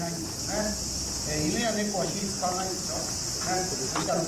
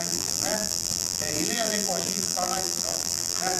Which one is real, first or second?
first